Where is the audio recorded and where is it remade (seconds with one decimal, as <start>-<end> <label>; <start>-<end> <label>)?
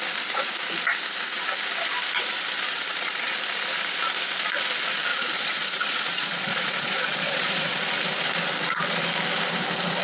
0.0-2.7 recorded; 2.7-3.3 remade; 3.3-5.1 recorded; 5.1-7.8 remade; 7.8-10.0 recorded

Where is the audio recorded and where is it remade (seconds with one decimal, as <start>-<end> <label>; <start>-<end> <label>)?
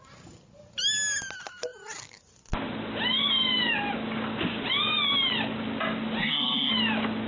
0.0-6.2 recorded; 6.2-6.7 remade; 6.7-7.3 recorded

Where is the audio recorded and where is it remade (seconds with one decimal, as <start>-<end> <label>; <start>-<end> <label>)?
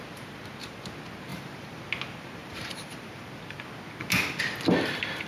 0.0-1.3 recorded; 1.3-1.8 remade; 1.8-2.4 recorded; 2.4-3.3 remade; 3.3-5.3 recorded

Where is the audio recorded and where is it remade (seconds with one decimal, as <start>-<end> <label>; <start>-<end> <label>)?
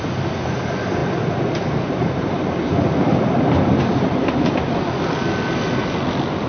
0.0-6.5 recorded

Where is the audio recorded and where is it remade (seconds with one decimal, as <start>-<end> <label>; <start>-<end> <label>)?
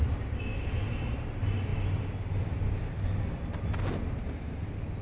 0.0-5.0 recorded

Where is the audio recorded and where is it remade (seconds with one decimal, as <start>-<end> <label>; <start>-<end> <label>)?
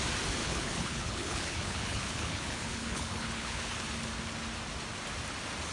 0.0-0.4 recorded; 0.4-3.8 remade; 3.8-5.7 recorded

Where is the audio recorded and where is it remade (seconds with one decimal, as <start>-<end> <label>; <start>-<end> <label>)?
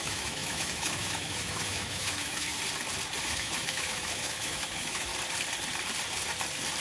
0.0-2.5 remade; 2.5-3.2 recorded; 3.2-5.1 remade; 5.1-6.8 recorded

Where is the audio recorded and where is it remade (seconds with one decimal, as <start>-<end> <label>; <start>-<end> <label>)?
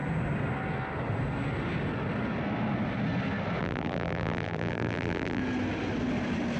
0.0-3.6 recorded; 3.6-5.4 remade; 5.4-6.6 recorded